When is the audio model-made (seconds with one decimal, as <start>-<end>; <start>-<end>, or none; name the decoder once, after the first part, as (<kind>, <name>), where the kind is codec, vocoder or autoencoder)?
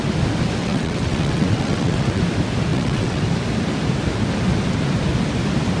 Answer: 0.6-2.2 (vocoder, WaveNeXt); 2.7-3.2